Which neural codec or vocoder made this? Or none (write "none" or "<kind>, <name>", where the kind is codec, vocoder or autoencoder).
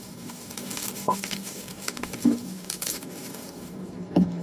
codec, DAC